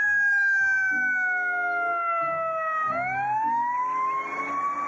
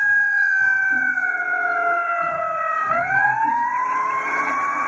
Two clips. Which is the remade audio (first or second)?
second